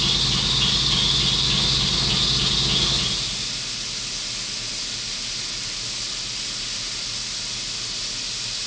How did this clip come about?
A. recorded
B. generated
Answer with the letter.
A